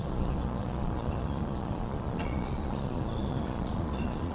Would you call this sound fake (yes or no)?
yes